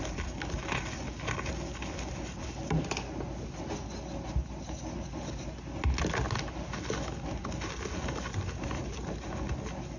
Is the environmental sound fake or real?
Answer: real